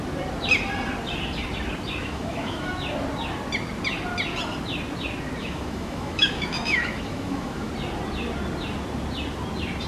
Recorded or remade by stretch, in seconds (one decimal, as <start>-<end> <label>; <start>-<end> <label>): 0.0-2.0 recorded; 2.0-2.7 remade; 2.7-5.4 recorded; 5.4-7.7 remade; 7.7-9.9 recorded